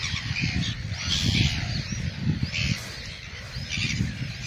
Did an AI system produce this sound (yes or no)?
no